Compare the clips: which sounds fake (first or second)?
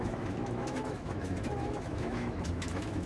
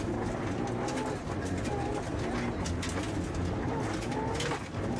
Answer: first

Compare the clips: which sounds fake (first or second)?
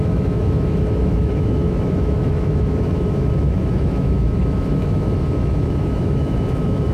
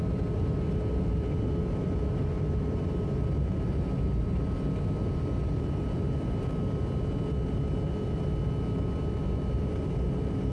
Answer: first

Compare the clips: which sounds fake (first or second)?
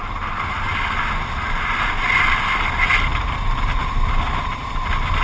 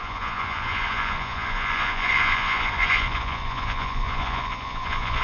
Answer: second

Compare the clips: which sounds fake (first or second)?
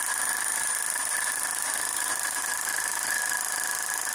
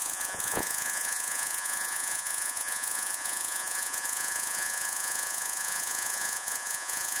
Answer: second